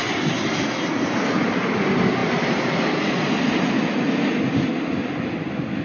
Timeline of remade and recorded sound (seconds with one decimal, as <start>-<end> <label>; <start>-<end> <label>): 0.0-5.8 recorded